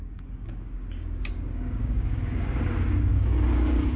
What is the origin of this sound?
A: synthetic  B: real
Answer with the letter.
A